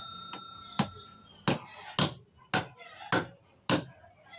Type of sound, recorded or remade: recorded